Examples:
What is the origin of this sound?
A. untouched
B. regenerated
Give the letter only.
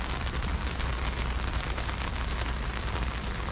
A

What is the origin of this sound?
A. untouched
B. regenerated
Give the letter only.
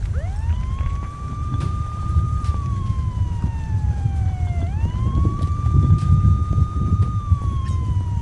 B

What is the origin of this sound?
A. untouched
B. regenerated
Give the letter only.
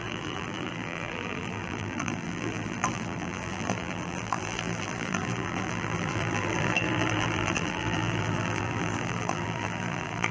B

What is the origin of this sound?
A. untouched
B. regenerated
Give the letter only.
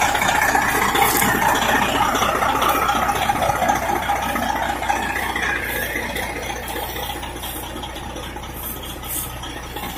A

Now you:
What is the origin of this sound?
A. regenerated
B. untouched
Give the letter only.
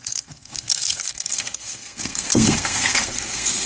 A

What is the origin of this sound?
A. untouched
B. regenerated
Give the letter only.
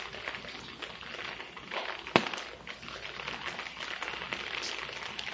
A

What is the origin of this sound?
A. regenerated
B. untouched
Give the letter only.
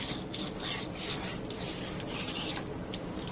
B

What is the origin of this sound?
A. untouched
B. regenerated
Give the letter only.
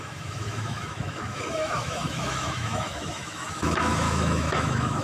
B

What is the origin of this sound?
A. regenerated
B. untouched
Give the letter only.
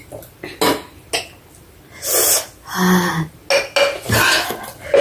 B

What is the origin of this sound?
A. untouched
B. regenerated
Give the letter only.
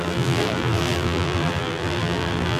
B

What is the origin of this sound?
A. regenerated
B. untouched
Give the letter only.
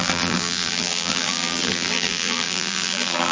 A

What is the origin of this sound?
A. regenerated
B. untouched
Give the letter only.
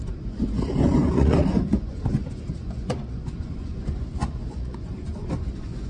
A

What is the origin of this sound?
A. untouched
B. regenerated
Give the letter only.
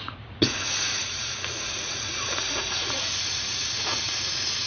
B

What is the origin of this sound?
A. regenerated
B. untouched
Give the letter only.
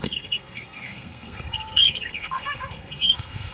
A